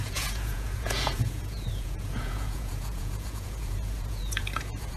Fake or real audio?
fake